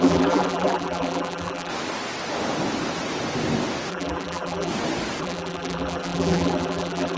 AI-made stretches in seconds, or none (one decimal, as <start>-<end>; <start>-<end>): 0.0-1.7; 3.9-4.7; 5.2-7.2